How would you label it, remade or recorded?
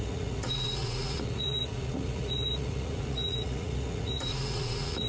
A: remade